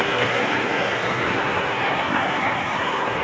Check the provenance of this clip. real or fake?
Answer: fake